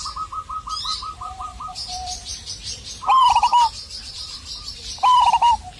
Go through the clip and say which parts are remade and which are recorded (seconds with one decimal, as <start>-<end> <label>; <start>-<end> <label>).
0.0-5.8 remade